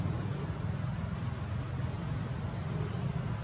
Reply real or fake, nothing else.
real